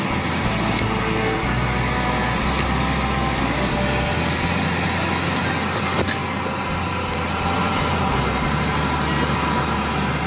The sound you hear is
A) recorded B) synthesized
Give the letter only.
A